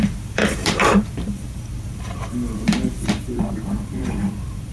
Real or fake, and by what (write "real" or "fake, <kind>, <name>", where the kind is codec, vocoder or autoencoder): fake, vocoder, BigVGAN v2